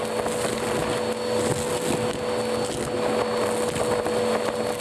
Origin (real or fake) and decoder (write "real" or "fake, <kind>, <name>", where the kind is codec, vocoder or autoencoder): real